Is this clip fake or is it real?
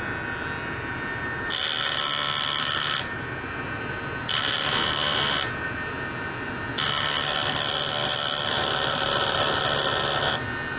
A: real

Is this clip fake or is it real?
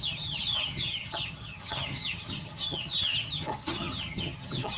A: fake